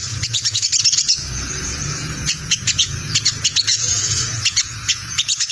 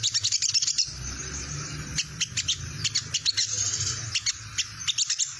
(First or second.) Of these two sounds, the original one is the second